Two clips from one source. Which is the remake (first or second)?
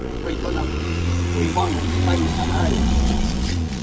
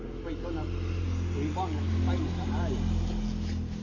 first